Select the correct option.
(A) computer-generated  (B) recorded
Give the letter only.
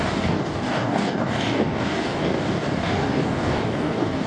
A